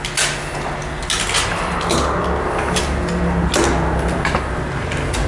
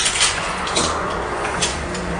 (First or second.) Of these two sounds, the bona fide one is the first